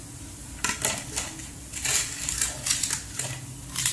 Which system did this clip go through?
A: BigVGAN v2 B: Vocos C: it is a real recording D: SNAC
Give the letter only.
C